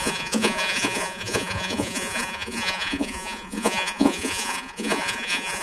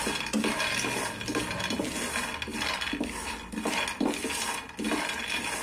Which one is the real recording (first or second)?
second